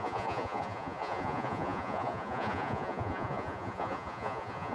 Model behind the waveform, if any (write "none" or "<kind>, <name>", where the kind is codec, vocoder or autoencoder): vocoder, Vocos